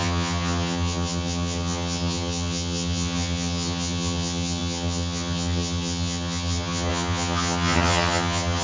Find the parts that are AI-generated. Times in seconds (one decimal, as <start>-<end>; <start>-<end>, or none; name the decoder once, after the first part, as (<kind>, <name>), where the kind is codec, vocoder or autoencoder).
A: 0.0-8.6 (vocoder, HiFi-GAN)